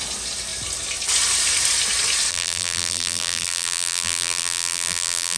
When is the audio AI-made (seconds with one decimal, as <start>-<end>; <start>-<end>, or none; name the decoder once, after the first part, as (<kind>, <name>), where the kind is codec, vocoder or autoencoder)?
2.3-5.4 (vocoder, BigVGAN v2)